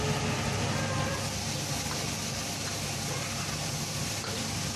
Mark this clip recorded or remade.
recorded